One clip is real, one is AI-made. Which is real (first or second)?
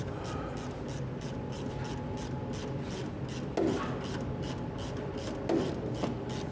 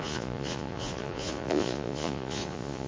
first